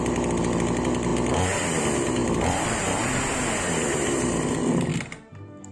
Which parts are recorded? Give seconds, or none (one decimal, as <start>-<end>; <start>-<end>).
0.0-2.2; 3.1-4.9